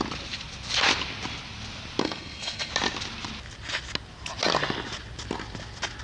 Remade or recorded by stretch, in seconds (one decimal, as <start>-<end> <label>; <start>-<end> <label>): 0.0-2.0 recorded; 2.0-2.7 remade; 2.7-6.0 recorded